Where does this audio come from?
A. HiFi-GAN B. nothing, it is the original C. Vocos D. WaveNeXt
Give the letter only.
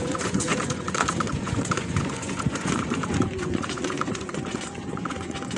C